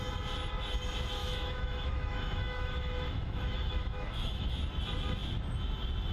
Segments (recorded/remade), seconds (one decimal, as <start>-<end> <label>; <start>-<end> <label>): 0.0-1.2 recorded; 1.2-4.6 remade; 4.6-6.1 recorded

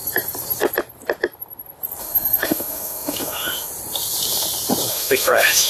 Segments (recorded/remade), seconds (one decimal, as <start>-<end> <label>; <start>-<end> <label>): 0.0-2.0 recorded; 2.0-3.7 remade; 3.7-4.9 recorded; 4.9-5.7 remade

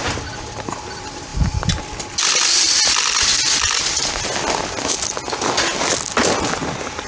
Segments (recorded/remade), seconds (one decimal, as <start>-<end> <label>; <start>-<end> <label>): 0.0-7.1 recorded

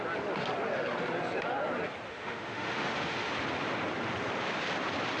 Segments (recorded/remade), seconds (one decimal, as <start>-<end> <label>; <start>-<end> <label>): 0.0-2.1 recorded; 2.1-3.3 remade; 3.3-5.2 recorded

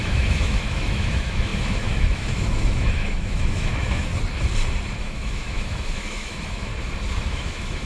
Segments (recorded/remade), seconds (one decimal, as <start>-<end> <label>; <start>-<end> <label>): 0.0-4.1 remade; 4.1-5.0 recorded; 5.0-6.7 remade; 6.7-7.2 recorded; 7.2-7.9 remade

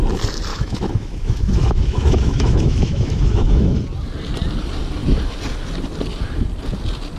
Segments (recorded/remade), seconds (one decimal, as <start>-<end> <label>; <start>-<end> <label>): 0.0-0.5 recorded; 0.5-3.8 remade; 3.8-7.2 recorded

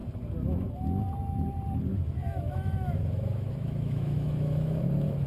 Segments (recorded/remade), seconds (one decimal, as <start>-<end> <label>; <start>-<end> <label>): 0.0-1.9 recorded; 1.9-5.3 remade